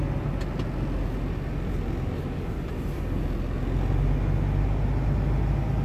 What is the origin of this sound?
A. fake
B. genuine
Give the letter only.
B